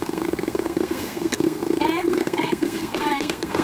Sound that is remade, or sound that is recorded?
remade